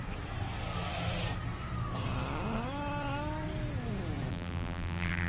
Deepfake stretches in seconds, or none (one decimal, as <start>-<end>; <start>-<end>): 4.3-5.3